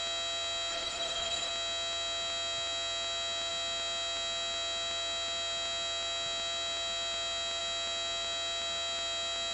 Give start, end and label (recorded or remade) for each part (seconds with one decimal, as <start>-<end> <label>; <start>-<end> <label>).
0.0-0.7 recorded; 0.7-1.5 remade; 1.5-9.5 recorded